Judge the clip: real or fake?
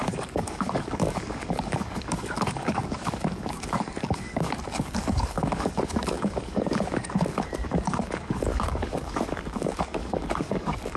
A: fake